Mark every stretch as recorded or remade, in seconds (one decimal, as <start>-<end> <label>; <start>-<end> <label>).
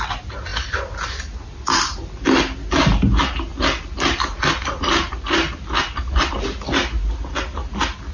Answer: 0.0-8.1 recorded